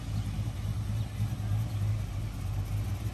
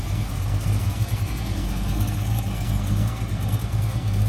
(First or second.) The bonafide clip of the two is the first